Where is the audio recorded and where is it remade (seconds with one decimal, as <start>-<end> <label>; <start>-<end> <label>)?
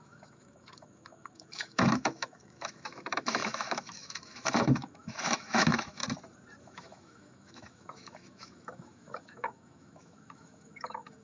0.0-6.0 remade; 6.0-6.6 recorded; 6.6-11.2 remade